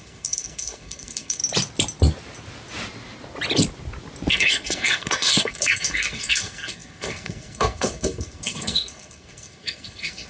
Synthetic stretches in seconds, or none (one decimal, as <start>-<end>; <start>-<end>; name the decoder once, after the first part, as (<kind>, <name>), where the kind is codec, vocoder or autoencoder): 0.0-1.4 (codec, SNAC); 4.3-10.3